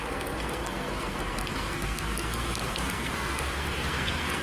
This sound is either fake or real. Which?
fake